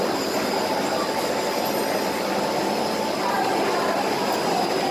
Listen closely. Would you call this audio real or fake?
real